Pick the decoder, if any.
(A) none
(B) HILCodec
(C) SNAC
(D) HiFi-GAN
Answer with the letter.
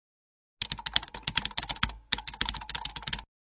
A